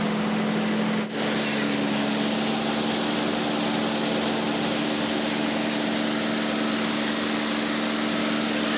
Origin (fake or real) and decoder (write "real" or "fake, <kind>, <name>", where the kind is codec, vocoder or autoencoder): real